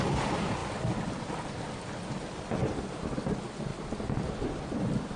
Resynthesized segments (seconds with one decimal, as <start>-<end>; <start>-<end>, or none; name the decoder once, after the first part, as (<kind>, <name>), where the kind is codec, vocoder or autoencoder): 0.6-1.1 (vocoder, BigVGAN v2); 2.6-3.1; 3.7-5.2